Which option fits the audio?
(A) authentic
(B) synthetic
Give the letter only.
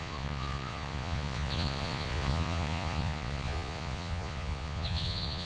B